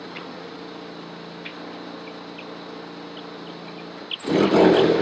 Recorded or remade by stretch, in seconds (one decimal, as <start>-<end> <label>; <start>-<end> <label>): 0.0-0.6 remade; 0.6-5.0 recorded